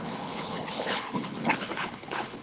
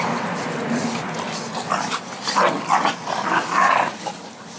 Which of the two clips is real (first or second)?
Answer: second